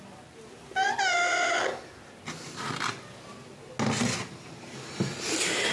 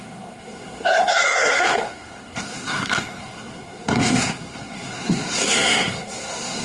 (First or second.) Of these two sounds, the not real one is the second